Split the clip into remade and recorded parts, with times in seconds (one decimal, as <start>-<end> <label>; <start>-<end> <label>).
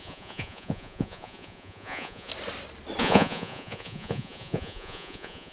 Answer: 0.0-2.3 remade; 2.3-3.0 recorded; 3.0-5.5 remade